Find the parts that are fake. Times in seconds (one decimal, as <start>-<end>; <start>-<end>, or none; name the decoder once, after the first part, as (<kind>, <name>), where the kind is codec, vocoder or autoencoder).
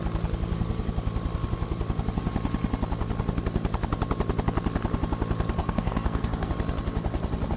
5.6-6.5 (codec, SNAC)